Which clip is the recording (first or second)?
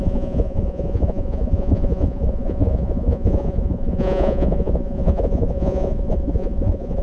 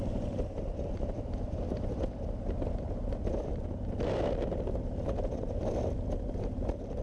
second